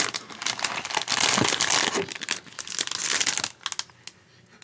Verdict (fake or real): real